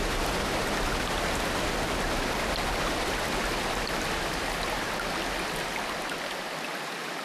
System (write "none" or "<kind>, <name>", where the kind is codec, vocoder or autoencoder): none